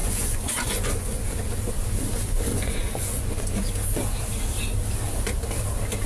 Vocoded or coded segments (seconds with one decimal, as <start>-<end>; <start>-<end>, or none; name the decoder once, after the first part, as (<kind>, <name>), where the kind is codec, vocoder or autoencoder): 0.0-1.2 (vocoder, Vocos); 2.5-3.4